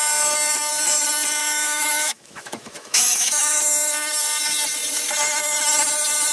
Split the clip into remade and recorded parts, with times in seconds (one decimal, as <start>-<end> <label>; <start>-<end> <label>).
0.0-1.4 recorded; 1.4-3.6 remade; 3.6-6.3 recorded